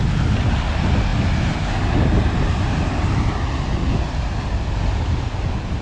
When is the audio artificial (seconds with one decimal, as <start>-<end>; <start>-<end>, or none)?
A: none